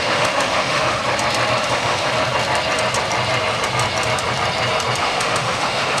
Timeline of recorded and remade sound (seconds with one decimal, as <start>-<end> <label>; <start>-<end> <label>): 0.0-1.0 remade; 1.0-1.7 recorded; 1.7-2.1 remade; 2.1-5.0 recorded; 5.0-6.0 remade